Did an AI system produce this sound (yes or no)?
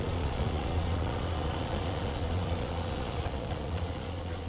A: yes